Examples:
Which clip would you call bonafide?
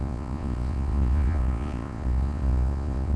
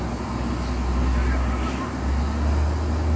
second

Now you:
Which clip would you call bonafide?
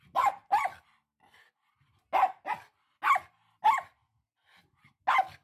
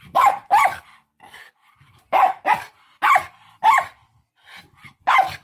first